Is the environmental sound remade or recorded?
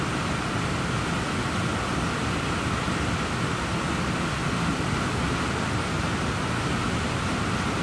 recorded